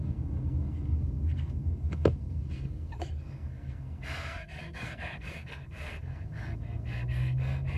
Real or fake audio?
fake